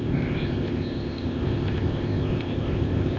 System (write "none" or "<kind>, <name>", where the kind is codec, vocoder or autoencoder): codec, ZipCodec